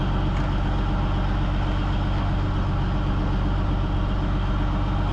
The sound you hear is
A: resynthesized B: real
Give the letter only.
B